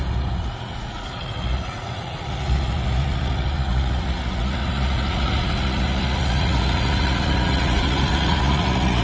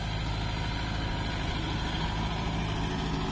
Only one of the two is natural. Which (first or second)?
second